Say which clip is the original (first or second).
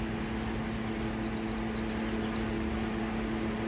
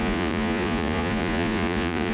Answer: first